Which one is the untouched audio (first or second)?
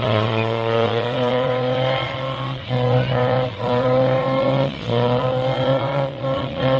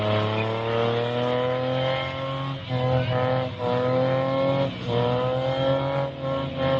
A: second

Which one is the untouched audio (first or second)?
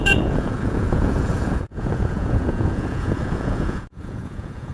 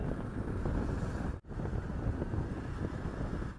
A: second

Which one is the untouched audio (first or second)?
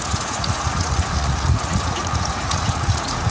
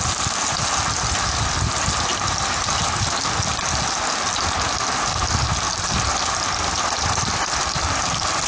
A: second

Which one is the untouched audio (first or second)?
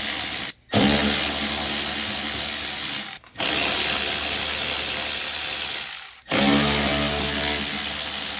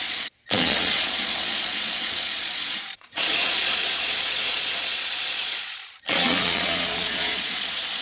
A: first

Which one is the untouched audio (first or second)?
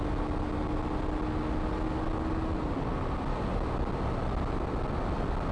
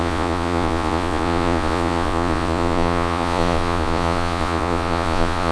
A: first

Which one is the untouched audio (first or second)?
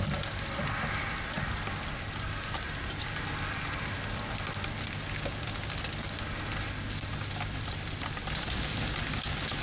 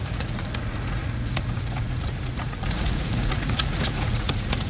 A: first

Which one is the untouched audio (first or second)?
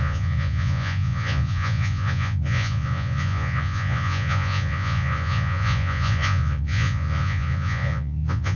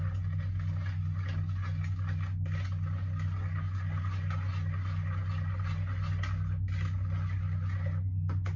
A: second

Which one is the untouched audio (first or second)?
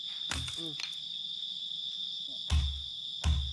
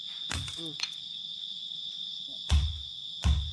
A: first